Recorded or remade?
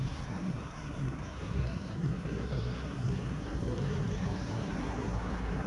remade